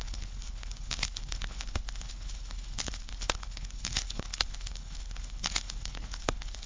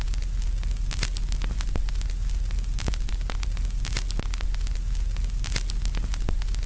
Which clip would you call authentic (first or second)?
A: second